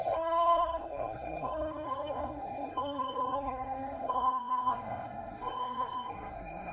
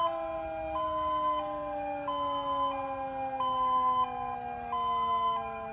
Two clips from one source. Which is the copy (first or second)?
first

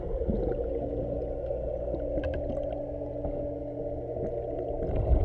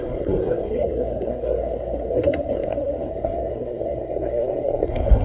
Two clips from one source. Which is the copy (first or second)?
second